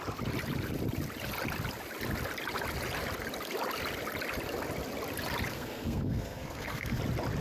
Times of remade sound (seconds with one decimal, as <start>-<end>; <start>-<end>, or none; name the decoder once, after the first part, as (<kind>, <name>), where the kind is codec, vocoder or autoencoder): 5.5-7.0 (codec, SNAC)